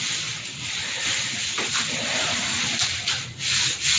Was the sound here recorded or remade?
recorded